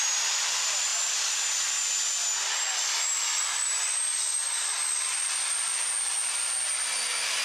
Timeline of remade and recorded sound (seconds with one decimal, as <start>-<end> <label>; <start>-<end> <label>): 0.0-7.4 recorded